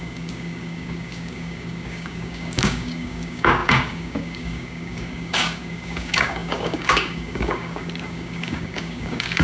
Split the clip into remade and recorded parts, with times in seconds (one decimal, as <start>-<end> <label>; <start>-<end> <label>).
0.0-9.4 remade